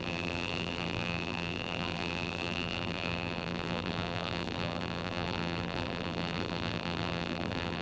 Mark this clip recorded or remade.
remade